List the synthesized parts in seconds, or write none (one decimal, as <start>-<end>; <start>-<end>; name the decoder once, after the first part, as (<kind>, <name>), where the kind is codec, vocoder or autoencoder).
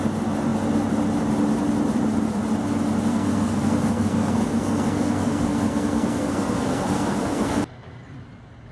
3.1-7.6 (codec, SNAC)